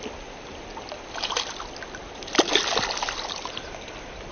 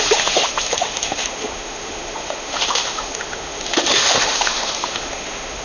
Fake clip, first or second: second